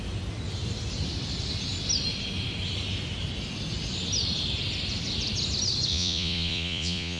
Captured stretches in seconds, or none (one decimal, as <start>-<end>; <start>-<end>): 0.0-5.9

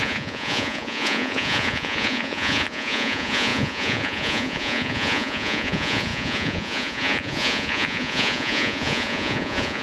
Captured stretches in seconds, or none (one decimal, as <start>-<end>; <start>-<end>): none